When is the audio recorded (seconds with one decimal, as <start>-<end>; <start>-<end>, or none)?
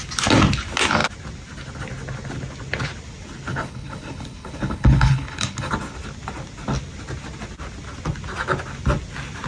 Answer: 0.0-3.5; 5.7-9.5